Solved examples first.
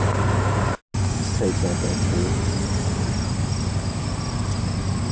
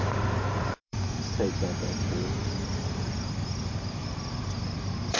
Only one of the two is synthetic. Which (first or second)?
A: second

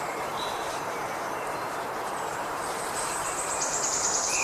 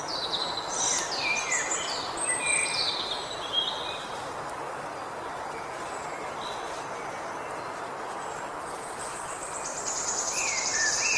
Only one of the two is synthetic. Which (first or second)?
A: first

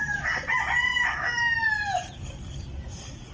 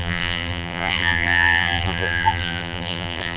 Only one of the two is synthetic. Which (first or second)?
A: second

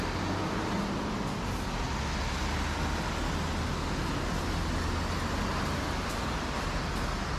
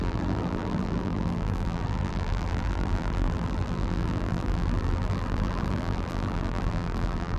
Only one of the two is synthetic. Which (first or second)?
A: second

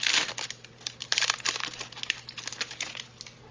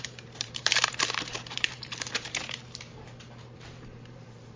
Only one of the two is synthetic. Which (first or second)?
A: second